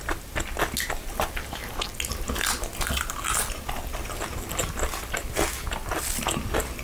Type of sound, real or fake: real